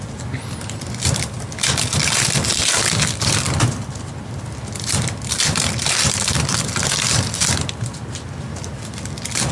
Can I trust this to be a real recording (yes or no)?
no